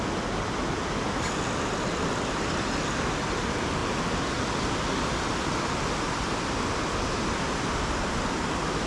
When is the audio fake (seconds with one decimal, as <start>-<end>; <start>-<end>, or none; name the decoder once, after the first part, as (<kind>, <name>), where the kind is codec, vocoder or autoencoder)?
none